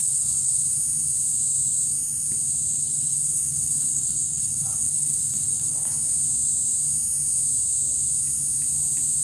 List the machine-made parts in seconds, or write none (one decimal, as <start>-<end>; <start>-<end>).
0.0-0.6; 2.8-5.9